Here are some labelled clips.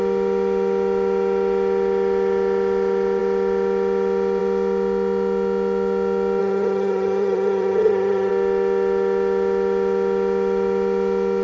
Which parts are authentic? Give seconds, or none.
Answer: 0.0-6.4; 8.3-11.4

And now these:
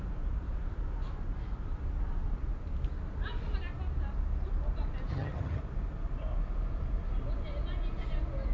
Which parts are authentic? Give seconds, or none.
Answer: 0.0-5.1; 5.6-8.5

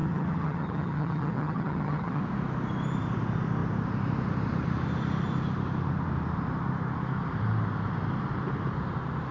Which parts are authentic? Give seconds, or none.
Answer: 2.2-9.3